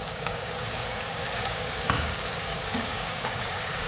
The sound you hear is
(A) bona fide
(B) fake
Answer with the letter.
B